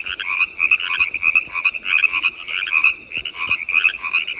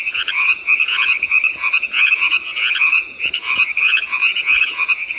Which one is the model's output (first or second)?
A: second